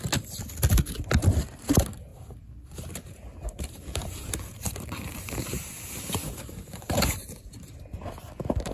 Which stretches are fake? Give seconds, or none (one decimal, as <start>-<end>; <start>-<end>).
2.1-7.0